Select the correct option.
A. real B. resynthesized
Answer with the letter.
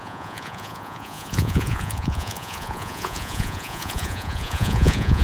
B